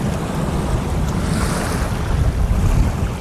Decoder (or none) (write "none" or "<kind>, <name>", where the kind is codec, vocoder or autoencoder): none